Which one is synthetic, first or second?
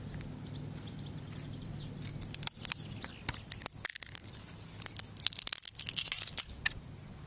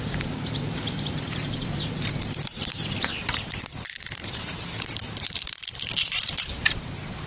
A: second